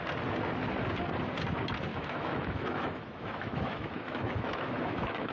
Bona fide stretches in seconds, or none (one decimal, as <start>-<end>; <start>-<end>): 0.0-1.9